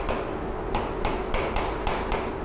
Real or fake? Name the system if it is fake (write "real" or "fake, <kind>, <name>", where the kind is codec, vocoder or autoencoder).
real